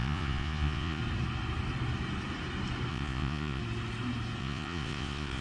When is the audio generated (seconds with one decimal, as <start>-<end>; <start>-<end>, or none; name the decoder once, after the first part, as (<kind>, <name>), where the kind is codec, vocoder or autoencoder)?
0.0-1.0 (vocoder, Vocos); 2.9-3.6; 4.4-5.4